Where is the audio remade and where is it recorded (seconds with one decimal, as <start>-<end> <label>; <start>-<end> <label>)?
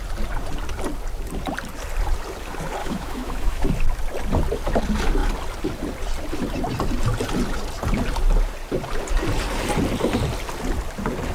0.0-2.8 recorded; 2.8-3.7 remade; 3.7-11.3 recorded